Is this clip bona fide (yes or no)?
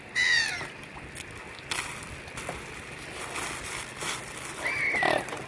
yes